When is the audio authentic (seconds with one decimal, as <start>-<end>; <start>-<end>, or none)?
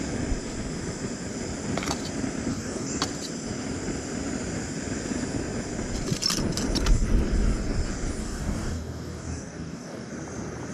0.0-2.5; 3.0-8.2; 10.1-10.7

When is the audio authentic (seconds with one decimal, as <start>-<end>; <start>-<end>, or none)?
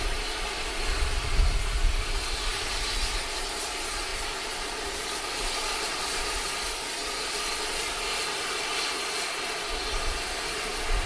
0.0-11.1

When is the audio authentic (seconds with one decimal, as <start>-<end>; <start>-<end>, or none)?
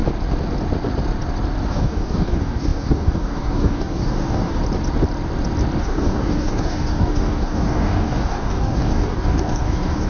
0.0-1.7; 4.6-5.8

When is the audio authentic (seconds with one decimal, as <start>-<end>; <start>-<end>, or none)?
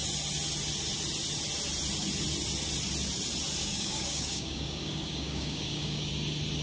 0.0-3.6; 6.1-6.6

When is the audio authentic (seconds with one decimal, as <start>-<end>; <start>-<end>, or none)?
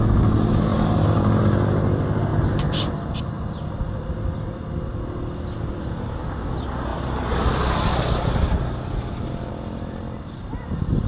0.0-11.1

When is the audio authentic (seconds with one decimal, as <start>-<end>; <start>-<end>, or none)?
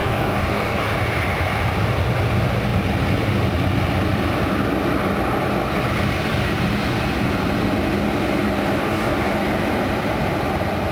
0.8-8.8; 9.3-10.9